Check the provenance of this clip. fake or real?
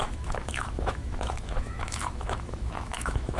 fake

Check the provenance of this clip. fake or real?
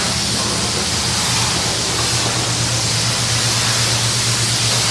real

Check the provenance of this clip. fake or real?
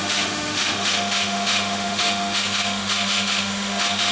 fake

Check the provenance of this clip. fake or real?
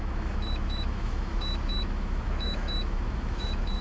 fake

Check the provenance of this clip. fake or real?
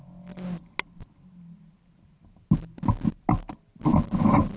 real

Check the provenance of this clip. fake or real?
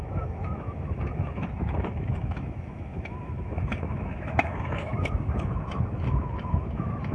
fake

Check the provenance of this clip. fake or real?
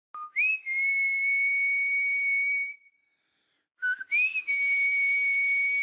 real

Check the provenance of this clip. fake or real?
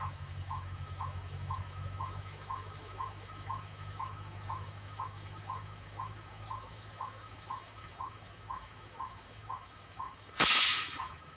fake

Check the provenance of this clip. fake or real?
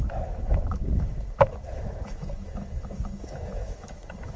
fake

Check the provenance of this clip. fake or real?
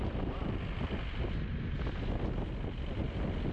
real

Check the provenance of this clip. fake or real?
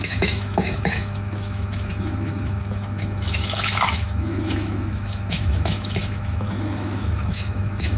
fake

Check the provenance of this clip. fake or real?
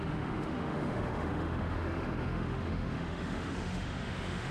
fake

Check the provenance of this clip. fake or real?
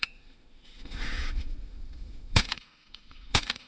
fake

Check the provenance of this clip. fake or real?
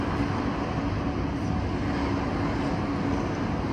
real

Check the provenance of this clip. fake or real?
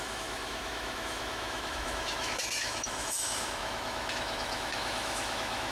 fake